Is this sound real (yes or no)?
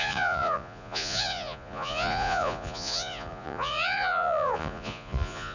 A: no